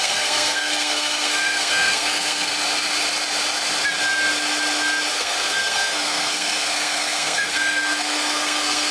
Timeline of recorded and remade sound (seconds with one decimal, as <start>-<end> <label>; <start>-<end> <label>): 0.0-2.5 remade; 2.5-5.1 recorded; 5.1-8.9 remade